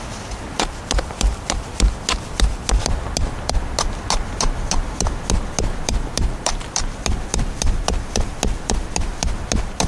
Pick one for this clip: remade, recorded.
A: recorded